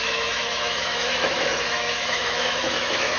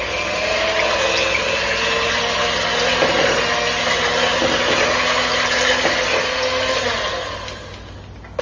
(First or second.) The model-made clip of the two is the first